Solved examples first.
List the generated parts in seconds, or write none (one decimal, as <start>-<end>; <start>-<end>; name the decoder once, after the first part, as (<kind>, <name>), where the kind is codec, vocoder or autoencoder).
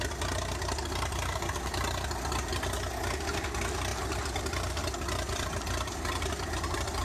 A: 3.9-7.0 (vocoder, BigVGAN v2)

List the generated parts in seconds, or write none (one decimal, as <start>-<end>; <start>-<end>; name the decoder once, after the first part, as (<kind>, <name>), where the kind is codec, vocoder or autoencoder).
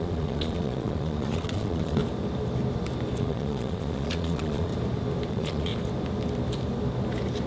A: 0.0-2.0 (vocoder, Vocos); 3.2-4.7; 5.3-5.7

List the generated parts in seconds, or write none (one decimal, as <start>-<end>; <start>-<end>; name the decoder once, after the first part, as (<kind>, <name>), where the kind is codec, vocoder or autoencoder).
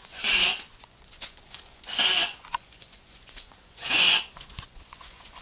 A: 0.0-5.4 (vocoder, Vocos)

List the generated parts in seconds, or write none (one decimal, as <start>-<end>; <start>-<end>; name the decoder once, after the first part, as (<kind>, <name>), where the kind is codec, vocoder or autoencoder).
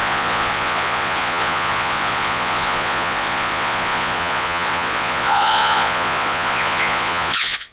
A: 0.0-7.7 (vocoder, Vocos)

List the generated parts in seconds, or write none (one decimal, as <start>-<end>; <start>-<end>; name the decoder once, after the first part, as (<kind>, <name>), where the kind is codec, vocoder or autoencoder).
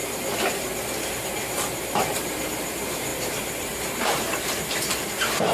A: 1.2-5.5 (vocoder, BigVGAN v2)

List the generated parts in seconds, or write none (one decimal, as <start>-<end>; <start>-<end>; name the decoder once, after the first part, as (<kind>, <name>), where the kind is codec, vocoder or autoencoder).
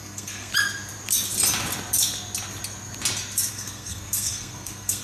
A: 0.0-0.5 (codec, SNAC); 3.5-5.0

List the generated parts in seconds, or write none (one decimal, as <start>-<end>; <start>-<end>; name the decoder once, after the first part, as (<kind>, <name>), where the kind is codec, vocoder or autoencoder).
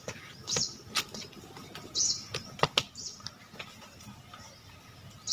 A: none